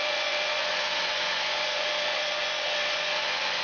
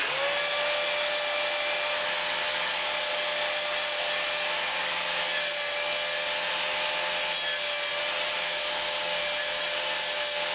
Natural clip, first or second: second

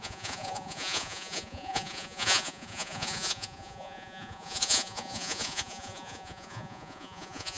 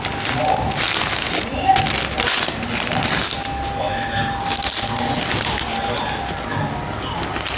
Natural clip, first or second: second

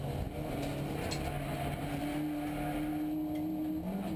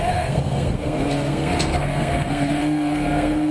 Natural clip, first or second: first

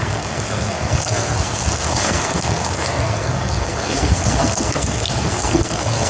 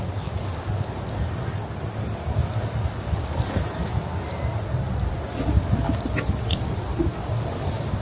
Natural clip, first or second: second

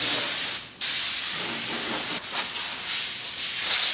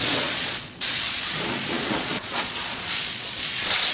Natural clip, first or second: first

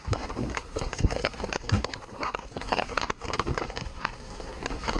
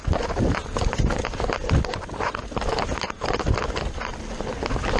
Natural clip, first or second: second